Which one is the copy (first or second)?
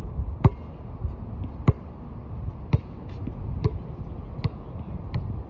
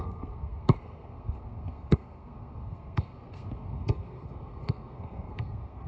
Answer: second